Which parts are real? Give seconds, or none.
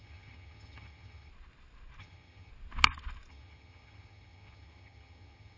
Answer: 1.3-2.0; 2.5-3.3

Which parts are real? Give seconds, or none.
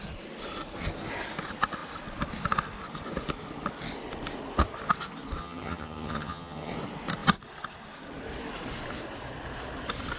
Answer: 0.0-5.4; 6.7-10.2